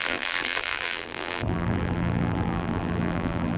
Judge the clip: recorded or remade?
remade